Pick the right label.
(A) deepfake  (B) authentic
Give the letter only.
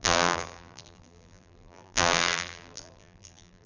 A